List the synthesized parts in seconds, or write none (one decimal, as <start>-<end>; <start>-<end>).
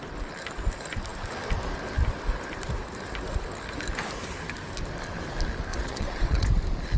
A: 5.7-6.5